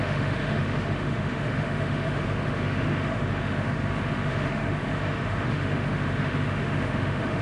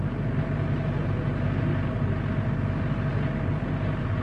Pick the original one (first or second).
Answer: second